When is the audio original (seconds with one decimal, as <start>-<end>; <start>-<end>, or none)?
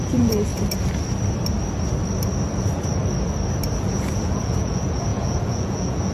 0.5-3.8